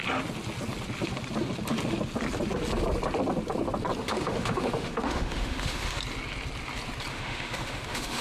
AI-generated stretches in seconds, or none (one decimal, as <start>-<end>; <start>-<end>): 4.0-6.0; 7.1-8.2